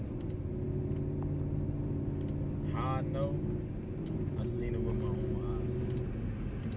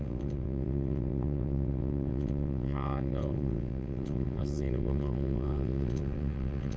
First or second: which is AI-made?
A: second